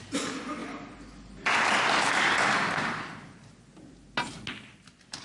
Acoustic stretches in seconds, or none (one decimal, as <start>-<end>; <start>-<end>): 0.0-5.2